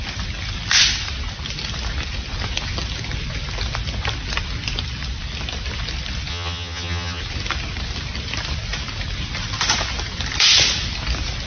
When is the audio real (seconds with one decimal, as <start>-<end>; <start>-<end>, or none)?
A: 0.0-6.3; 7.2-11.5